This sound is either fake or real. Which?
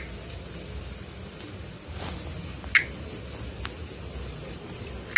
real